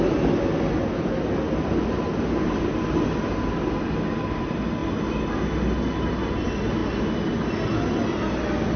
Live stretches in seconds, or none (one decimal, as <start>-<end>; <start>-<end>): 0.0-8.8